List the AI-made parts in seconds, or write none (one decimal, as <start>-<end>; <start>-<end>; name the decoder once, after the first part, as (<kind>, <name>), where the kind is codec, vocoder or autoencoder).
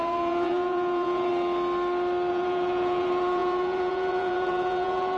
0.0-1.3 (vocoder, Vocos); 2.3-5.2